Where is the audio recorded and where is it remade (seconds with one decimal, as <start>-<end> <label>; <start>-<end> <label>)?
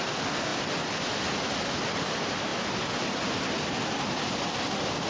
0.0-5.1 recorded